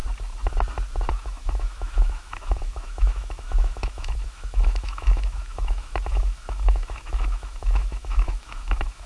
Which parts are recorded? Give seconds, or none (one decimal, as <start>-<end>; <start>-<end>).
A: 0.0-1.1